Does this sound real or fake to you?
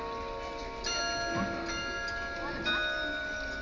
real